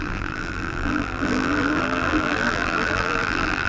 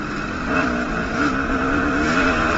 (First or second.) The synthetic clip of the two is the first